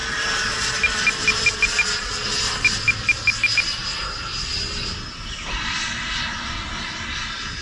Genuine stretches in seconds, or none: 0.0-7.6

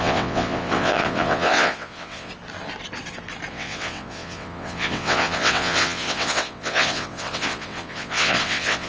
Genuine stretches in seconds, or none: 2.3-3.5

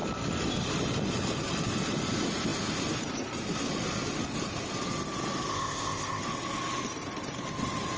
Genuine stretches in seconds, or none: 0.0-5.5; 6.2-8.0

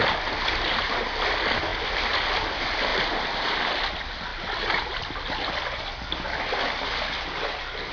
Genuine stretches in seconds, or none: 0.0-7.9

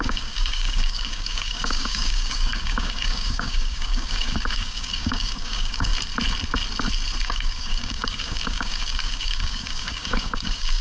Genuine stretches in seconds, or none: 5.9-7.2